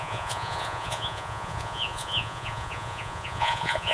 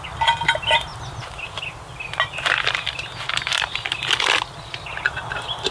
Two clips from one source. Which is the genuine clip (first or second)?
second